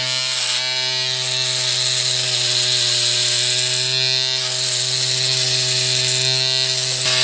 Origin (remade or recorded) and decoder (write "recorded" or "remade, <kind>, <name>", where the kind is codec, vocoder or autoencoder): recorded